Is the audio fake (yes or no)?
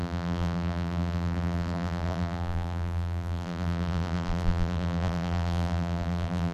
yes